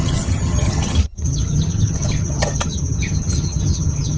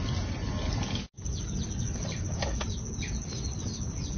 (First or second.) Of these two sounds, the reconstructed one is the first